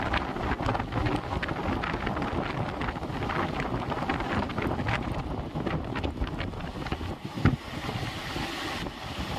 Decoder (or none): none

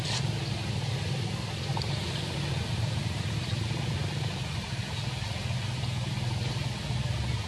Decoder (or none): none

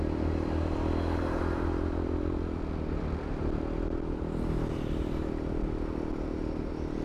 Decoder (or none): none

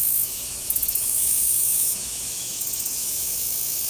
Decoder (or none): autoencoder, DAC-VAE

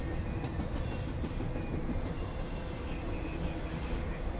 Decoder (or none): none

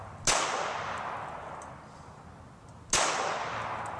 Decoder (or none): none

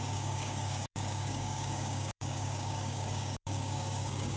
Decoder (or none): codec, DAC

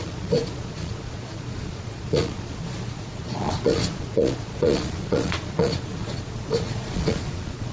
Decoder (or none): vocoder, Vocos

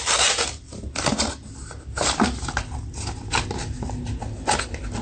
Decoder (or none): none